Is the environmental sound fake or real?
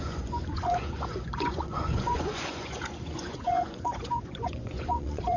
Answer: fake